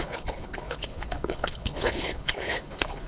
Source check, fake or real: fake